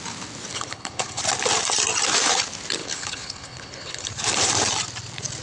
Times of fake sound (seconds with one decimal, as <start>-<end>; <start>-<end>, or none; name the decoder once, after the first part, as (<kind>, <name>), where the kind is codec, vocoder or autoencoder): 0.5-1.2 (codec, HILCodec); 2.8-4.1